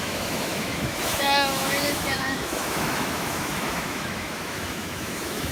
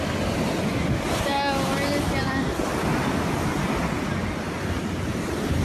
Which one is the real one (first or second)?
second